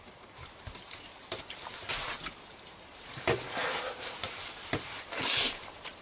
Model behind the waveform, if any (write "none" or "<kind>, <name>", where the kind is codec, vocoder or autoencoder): vocoder, BigVGAN v2